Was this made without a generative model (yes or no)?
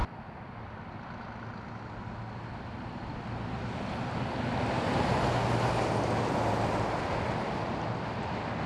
yes